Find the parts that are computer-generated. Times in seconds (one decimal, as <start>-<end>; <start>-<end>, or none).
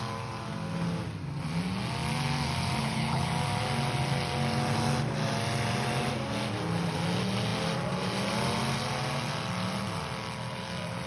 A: 2.8-3.3